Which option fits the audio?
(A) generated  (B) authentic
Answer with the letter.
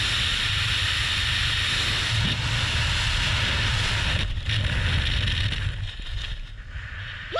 B